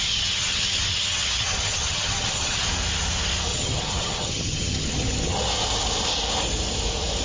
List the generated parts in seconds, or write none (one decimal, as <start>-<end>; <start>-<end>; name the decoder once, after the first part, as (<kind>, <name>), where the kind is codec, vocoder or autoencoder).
0.0-2.7 (vocoder, HiFi-GAN); 3.5-5.5